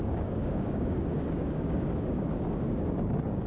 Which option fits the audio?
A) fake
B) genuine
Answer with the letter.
A